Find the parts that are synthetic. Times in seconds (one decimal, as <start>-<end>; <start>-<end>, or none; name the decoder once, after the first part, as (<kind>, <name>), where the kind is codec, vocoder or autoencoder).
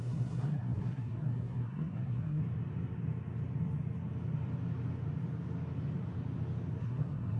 0.0-2.4 (codec, SNAC); 6.8-7.4